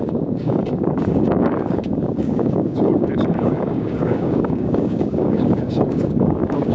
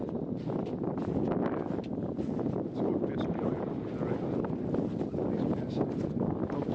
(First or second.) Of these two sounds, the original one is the second